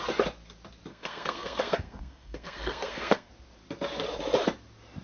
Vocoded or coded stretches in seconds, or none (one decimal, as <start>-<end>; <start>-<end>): 0.9-3.3